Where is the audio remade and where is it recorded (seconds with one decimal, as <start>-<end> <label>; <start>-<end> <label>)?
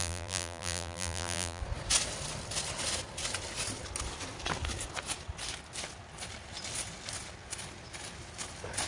0.0-1.6 remade; 1.6-8.9 recorded